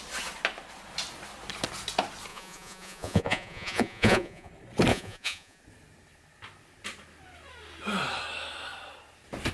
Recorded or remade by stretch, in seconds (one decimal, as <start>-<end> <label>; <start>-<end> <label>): 0.0-2.3 recorded; 2.3-4.5 remade; 4.5-4.9 recorded; 4.9-5.6 remade; 5.6-9.5 recorded